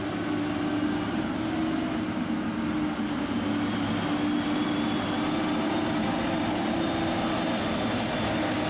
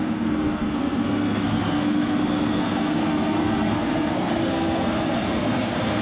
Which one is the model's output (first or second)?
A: second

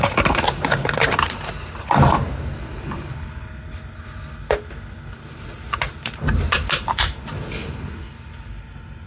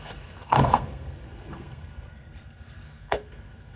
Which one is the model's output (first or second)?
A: second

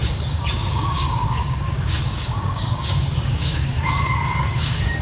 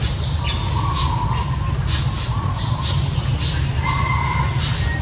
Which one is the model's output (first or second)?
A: first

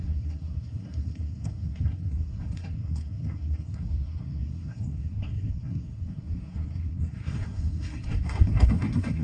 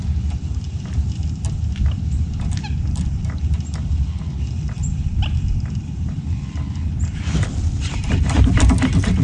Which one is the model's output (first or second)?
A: first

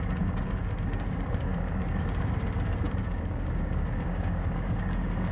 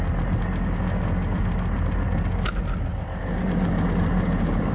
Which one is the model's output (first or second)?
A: first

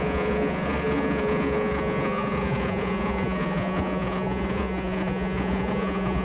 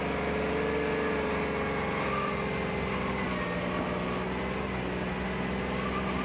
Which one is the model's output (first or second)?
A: first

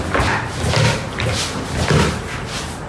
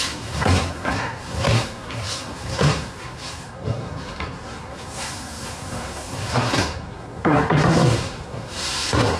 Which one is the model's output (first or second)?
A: second